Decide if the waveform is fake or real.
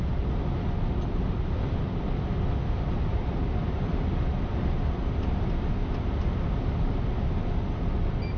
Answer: real